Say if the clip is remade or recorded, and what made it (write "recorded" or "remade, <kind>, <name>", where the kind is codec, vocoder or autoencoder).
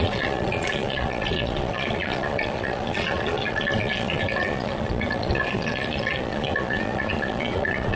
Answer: remade, vocoder, Vocos